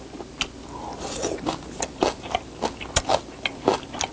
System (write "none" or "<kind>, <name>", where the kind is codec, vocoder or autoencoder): none